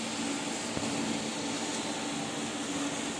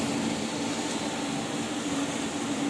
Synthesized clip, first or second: second